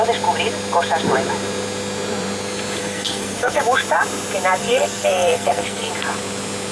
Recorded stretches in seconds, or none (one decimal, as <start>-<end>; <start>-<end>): 0.0-2.8; 3.6-4.6; 5.9-6.7

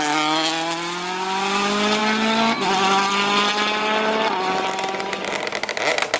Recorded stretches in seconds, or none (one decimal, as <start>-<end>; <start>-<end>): 0.0-6.2

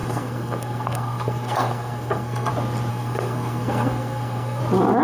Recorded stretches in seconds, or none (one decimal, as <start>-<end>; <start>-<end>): 2.5-2.9; 4.6-5.0

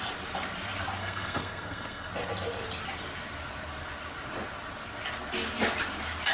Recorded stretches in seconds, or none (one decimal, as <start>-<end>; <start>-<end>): 0.0-1.0; 2.1-6.3